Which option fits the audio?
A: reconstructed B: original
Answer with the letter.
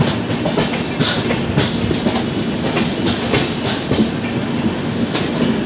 B